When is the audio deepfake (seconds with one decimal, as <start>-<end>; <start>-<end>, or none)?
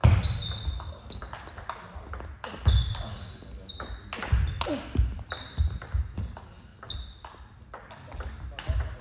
none